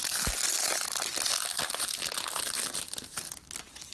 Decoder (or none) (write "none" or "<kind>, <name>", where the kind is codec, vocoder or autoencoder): vocoder, BigVGAN v2